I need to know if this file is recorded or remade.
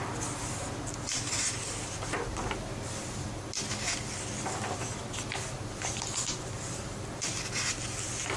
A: recorded